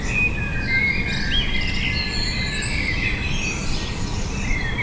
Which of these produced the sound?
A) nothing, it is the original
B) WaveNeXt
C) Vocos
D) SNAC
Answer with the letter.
A